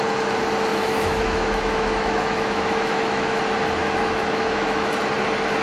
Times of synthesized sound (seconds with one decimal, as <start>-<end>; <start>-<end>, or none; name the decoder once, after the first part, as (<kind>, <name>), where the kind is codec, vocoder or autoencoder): 0.7-3.4 (autoencoder, DAC-VAE); 3.8-4.9